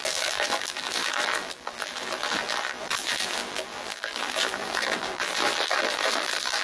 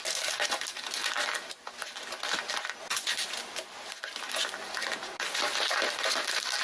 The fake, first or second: first